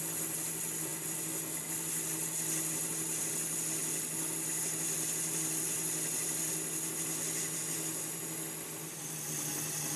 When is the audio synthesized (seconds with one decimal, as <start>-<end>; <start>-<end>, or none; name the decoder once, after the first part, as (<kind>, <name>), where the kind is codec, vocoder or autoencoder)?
none